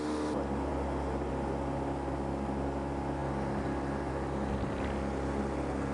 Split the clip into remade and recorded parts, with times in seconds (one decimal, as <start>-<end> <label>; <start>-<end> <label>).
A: 0.0-5.9 recorded